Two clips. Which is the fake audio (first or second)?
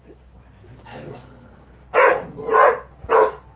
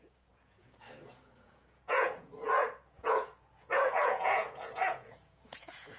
second